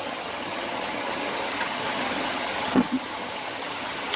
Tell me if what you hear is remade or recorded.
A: remade